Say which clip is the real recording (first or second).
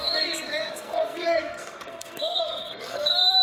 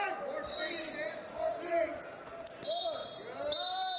second